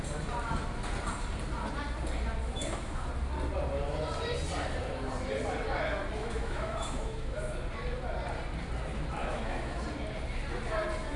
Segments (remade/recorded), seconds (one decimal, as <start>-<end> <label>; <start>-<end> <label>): 0.0-2.4 recorded; 2.4-3.1 remade; 3.1-6.2 recorded; 6.2-7.5 remade; 7.5-9.2 recorded; 9.2-9.8 remade; 9.8-11.2 recorded